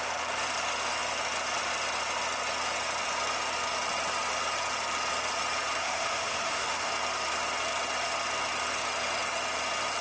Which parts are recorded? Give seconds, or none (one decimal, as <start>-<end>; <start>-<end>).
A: 0.0-5.8; 6.9-10.0